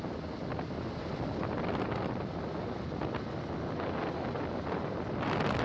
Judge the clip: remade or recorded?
recorded